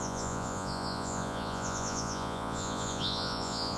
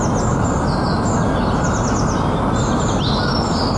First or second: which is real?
second